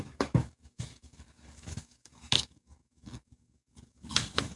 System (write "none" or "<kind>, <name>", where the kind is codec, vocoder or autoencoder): codec, DAC